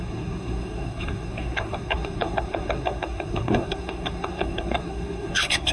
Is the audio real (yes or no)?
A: no